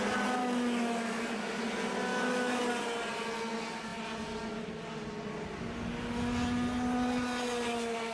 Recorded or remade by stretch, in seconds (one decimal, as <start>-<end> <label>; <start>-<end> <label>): 0.0-0.4 recorded; 0.4-1.2 remade; 1.2-2.1 recorded; 2.1-2.6 remade; 2.6-8.1 recorded

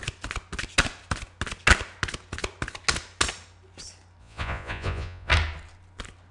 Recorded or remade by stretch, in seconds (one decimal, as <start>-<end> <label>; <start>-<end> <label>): 0.0-4.2 recorded; 4.2-5.3 remade; 5.3-6.3 recorded

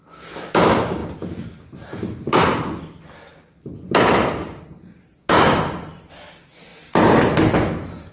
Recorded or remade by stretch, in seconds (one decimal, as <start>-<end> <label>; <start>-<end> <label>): 0.0-8.1 recorded